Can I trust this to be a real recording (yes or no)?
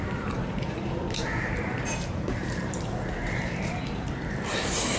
no